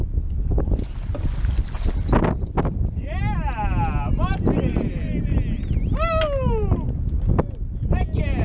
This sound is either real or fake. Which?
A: real